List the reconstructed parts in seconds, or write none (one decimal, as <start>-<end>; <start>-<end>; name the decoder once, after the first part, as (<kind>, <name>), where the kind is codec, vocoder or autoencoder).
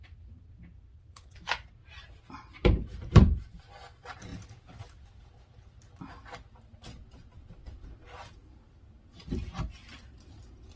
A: 1.8-3.6 (vocoder, BigVGAN v2); 9.4-9.9